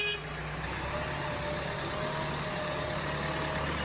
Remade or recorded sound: recorded